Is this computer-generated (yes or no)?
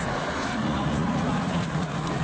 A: yes